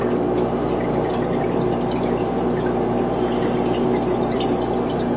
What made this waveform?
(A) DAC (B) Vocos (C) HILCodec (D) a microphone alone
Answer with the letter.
D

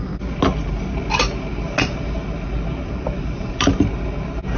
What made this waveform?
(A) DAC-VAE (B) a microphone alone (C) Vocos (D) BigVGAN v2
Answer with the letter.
B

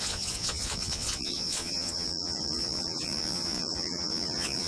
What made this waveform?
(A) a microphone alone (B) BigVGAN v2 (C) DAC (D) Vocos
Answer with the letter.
D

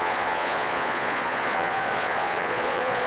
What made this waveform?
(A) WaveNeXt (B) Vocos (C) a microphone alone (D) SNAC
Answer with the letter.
B